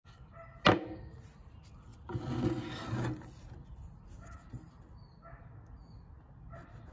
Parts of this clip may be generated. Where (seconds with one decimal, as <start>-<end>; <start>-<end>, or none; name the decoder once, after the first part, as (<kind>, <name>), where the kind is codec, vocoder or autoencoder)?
none